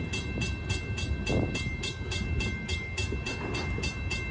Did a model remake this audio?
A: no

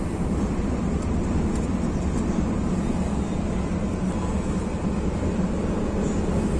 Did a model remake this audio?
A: no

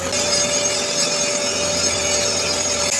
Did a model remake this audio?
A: no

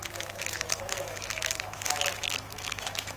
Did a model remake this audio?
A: yes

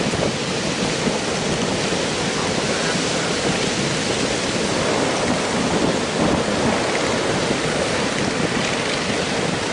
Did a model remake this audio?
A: no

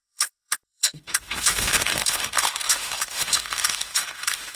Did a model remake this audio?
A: yes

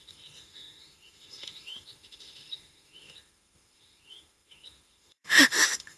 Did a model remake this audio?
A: yes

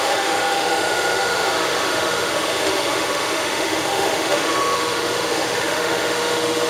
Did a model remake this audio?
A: yes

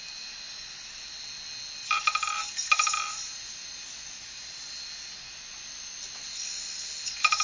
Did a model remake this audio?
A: no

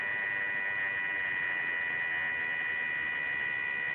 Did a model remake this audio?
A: no